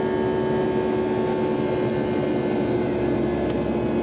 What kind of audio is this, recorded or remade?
recorded